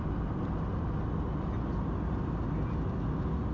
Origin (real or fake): real